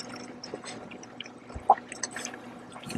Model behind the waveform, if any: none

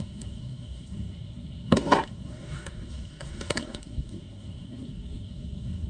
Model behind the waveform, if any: codec, SNAC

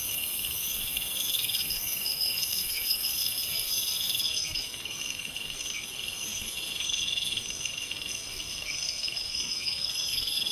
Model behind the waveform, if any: codec, SNAC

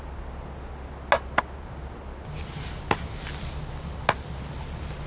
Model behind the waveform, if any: none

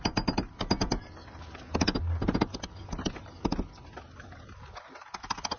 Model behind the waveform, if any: none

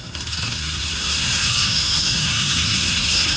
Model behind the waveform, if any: codec, SNAC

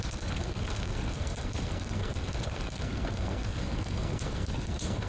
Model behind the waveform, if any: codec, SNAC